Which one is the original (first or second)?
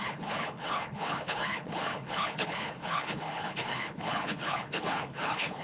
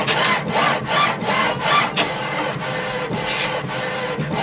second